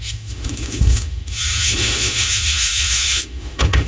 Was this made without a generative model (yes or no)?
no